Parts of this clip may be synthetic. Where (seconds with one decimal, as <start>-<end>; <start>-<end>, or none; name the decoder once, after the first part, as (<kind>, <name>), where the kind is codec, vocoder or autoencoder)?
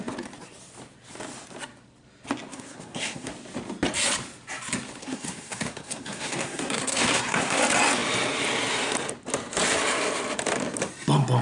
2.5-3.3 (codec, SNAC); 5.0-7.6